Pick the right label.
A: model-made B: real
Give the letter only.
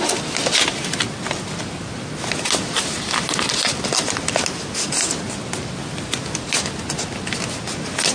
B